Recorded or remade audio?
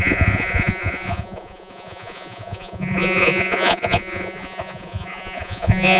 remade